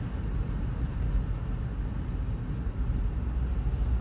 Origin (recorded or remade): recorded